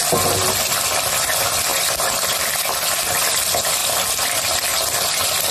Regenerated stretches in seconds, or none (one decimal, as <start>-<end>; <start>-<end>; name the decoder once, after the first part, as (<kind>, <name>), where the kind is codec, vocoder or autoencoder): 1.7-3.3 (vocoder, BigVGAN v2); 3.8-4.5